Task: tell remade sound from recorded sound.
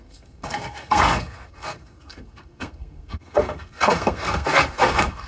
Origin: remade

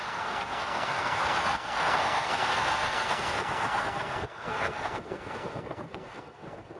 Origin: remade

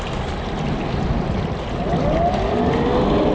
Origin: recorded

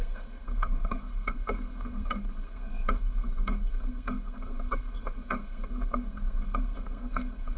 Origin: remade